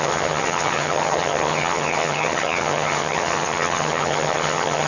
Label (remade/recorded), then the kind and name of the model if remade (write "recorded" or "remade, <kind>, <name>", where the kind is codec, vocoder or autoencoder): remade, vocoder, HiFi-GAN